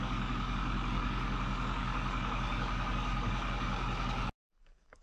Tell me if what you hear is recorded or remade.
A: remade